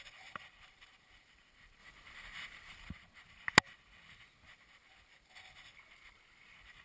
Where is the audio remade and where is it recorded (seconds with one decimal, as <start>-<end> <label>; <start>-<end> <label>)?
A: 0.0-6.8 recorded